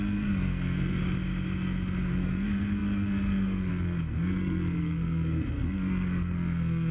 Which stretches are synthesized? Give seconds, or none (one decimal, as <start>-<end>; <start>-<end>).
0.0-1.0; 2.1-6.9